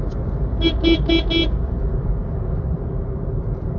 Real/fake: real